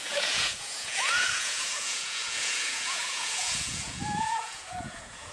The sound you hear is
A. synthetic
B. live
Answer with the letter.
A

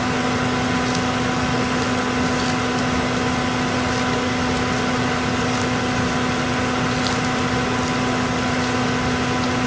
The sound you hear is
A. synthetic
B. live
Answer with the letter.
B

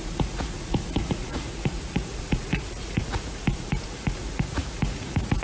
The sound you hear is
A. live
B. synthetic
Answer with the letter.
B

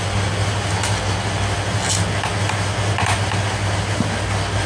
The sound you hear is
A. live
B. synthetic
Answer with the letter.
A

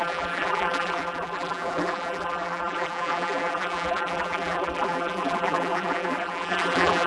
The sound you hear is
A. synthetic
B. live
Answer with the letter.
A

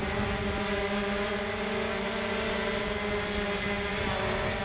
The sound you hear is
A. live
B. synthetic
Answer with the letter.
A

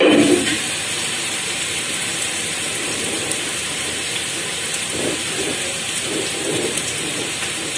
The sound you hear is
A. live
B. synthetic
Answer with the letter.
B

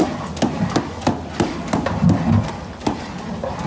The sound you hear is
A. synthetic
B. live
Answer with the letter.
B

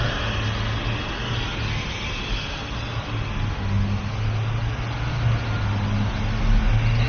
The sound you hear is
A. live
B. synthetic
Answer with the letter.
A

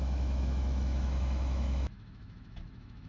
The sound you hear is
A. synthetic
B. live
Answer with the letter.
A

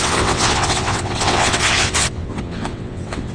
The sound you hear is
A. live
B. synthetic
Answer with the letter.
B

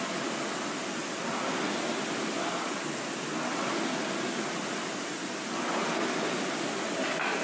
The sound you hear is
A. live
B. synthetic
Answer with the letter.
A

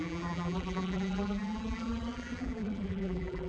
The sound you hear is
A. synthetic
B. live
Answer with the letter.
A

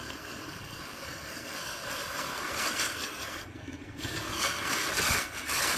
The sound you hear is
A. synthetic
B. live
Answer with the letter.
A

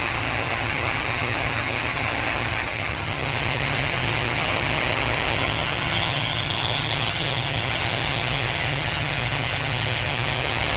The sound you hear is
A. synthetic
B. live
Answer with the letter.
A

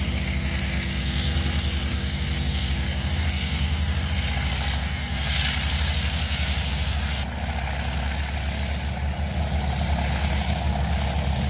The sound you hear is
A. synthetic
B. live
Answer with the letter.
B